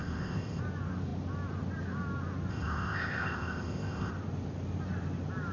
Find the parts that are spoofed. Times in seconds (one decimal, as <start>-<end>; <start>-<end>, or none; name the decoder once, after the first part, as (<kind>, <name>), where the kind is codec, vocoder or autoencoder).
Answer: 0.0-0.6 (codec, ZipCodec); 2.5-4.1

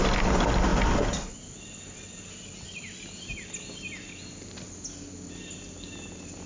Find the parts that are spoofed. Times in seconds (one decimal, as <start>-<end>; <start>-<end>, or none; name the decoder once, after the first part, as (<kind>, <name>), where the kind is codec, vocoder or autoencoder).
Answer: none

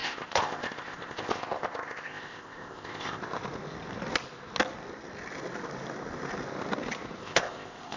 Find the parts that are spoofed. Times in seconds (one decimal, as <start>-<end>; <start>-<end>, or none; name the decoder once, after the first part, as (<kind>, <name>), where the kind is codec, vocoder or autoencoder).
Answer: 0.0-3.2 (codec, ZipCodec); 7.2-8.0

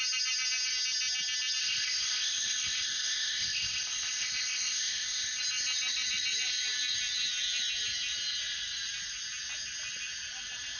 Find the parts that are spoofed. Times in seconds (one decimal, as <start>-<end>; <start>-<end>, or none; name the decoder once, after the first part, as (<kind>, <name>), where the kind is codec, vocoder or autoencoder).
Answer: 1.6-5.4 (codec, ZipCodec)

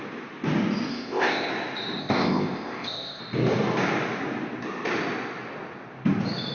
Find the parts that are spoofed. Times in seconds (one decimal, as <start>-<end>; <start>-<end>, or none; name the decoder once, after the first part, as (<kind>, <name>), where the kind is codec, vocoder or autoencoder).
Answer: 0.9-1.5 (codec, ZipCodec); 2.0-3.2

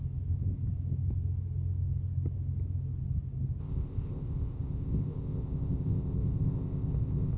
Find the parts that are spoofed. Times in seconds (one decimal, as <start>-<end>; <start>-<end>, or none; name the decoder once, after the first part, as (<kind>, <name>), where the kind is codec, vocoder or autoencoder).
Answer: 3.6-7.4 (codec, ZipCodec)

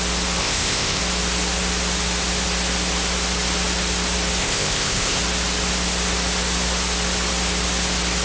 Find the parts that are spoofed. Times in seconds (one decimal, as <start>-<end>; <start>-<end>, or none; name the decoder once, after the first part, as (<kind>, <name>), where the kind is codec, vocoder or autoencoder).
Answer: 0.4-1.0 (codec, ZipCodec); 4.4-5.2

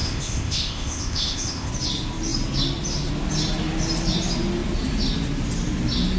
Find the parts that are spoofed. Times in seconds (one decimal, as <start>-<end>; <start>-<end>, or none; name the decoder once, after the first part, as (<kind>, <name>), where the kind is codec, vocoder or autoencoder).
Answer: 0.0-1.7 (codec, ZipCodec)